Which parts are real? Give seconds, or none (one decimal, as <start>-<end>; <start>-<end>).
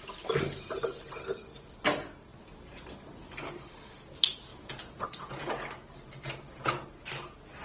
0.0-4.5; 5.5-7.6